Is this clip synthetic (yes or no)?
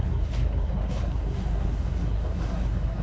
yes